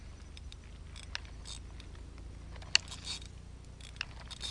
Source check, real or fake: real